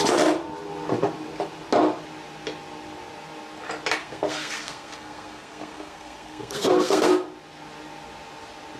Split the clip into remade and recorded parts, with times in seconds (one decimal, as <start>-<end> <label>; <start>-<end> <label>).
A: 0.0-4.0 recorded; 4.0-7.1 remade; 7.1-8.8 recorded